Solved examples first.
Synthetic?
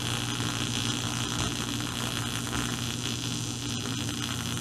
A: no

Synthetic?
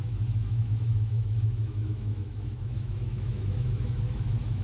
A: yes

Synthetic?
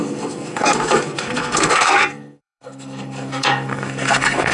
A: yes